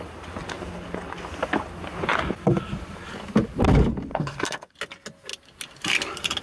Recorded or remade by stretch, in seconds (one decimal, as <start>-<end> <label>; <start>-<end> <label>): 0.0-4.1 recorded; 4.1-4.7 remade; 4.7-6.4 recorded

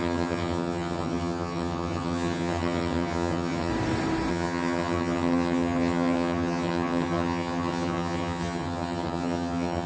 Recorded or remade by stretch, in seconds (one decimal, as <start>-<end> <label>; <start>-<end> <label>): 0.0-3.7 remade; 3.7-4.3 recorded; 4.3-9.9 remade

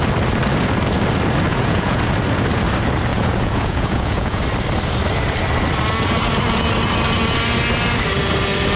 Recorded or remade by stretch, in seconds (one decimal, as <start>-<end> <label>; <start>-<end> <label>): 0.0-1.5 recorded; 1.5-2.0 remade; 2.0-3.1 recorded; 3.1-4.4 remade; 4.4-8.8 recorded